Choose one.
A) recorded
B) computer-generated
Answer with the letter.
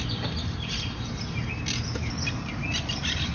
A